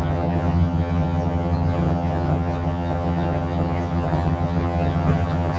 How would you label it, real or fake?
fake